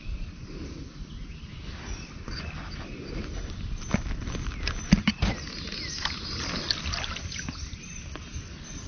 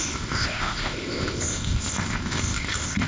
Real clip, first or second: first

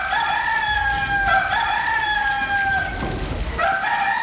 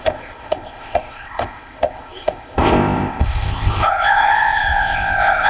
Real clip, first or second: first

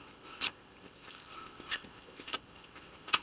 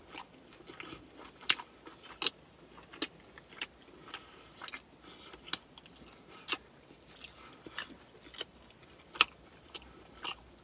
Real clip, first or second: second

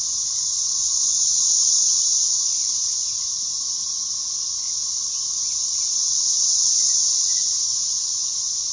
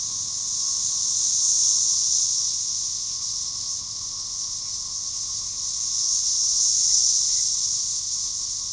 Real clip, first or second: first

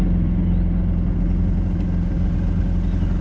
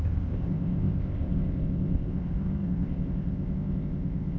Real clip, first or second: first